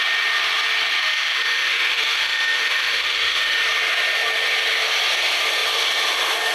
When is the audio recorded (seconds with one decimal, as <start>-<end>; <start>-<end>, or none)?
0.0-1.0; 3.6-6.5